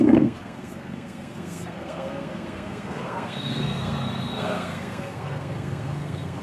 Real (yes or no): no